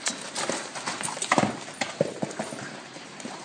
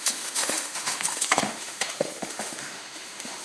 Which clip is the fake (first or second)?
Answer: second